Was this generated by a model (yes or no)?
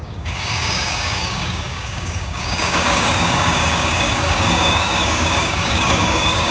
yes